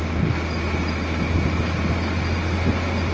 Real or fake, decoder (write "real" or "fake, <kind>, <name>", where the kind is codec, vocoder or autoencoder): real